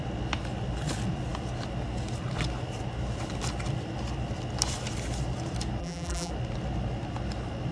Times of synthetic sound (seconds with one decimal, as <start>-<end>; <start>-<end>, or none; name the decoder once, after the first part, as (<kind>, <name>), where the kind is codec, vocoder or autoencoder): 5.8-6.3 (vocoder, BigVGAN v2)